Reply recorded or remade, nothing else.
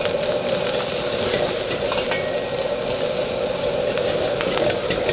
recorded